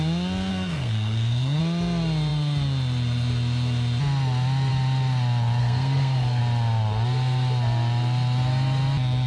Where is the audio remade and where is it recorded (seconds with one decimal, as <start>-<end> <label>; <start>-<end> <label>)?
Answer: 0.0-0.5 recorded; 0.5-1.6 remade; 1.6-5.6 recorded; 5.6-6.4 remade; 6.4-9.3 recorded